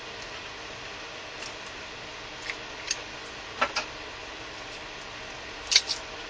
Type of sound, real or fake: real